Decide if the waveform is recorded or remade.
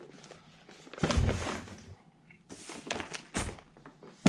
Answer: recorded